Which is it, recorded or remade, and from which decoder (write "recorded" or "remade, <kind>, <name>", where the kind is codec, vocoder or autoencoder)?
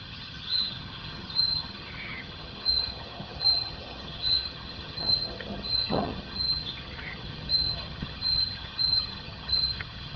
remade, vocoder, HiFi-GAN